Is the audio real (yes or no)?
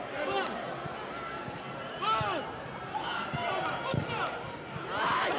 yes